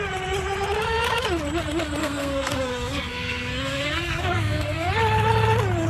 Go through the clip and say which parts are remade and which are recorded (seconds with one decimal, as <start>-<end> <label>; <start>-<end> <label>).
0.0-2.0 recorded; 2.0-4.9 remade; 4.9-5.9 recorded